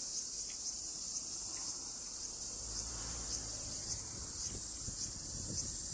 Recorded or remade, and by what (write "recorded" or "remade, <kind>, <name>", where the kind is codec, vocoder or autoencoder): remade, vocoder, BigVGAN v2